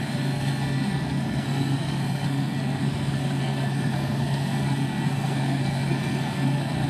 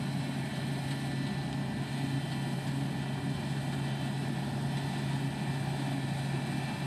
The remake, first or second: first